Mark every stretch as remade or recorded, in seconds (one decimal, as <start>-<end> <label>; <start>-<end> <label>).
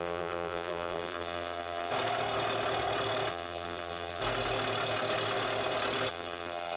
0.0-1.9 remade; 1.9-3.3 recorded; 3.3-4.2 remade; 4.2-6.1 recorded; 6.1-6.8 remade